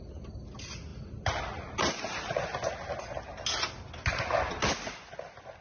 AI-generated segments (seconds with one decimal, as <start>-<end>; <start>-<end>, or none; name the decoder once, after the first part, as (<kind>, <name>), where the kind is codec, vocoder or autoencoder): none